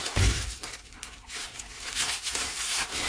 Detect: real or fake fake